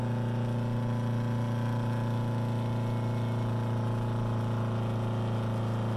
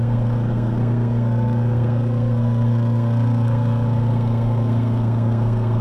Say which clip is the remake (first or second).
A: second